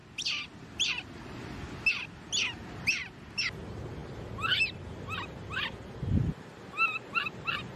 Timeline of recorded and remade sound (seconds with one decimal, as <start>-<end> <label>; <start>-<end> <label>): 0.0-7.8 recorded

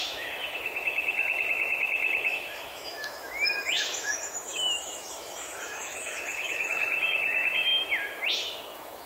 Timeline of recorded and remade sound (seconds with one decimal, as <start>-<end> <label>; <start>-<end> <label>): 0.0-9.1 remade

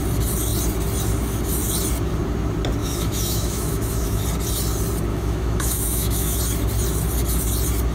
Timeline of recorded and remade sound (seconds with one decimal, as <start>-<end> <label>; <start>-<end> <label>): 0.0-2.8 recorded; 2.8-4.2 remade; 4.2-5.1 recorded; 5.1-6.4 remade; 6.4-7.9 recorded

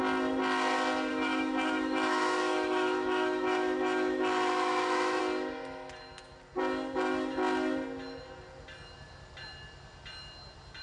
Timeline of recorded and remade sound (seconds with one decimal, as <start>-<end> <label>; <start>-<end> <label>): 0.0-1.1 recorded; 1.1-5.2 remade; 5.2-10.8 recorded

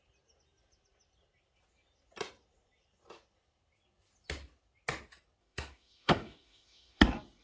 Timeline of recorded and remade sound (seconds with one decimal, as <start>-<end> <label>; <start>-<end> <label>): 0.0-5.4 recorded; 5.4-7.0 remade; 7.0-7.4 recorded